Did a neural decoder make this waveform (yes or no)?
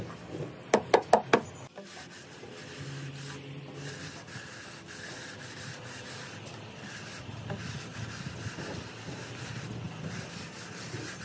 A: no